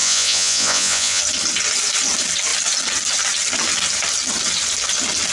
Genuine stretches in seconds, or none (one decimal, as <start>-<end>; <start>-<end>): 1.2-5.3